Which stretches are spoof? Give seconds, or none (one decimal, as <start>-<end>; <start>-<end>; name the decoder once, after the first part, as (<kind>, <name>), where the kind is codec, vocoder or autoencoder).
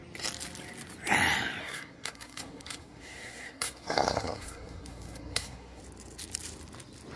1.6-5.8 (codec, SNAC)